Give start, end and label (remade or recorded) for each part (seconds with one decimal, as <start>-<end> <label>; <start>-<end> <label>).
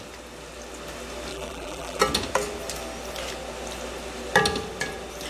0.0-1.3 recorded; 1.3-2.0 remade; 2.0-5.3 recorded